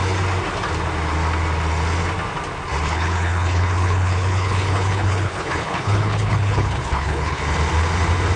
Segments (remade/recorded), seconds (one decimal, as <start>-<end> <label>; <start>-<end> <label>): 0.0-2.8 recorded; 2.8-7.4 remade; 7.4-8.4 recorded